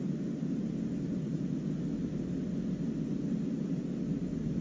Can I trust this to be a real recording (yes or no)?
yes